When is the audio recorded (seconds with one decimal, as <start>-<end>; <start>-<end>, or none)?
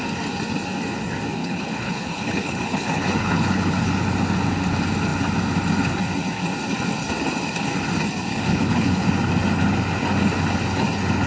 0.0-1.4; 3.9-8.3; 9.1-11.3